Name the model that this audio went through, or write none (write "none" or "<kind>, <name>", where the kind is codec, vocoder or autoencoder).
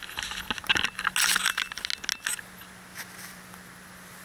none